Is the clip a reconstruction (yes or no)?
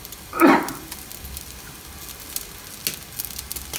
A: no